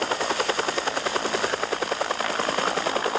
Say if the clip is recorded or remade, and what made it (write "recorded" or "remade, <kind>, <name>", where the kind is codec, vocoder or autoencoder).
recorded